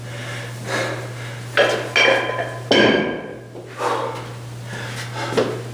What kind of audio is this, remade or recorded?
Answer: recorded